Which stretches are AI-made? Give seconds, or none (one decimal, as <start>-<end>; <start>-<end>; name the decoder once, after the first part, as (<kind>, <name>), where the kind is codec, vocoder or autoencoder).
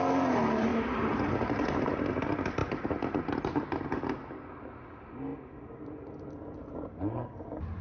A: none